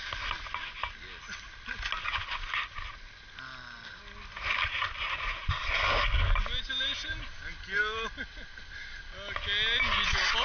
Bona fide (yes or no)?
yes